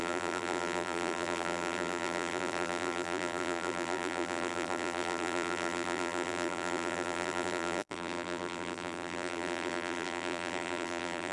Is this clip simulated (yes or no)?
yes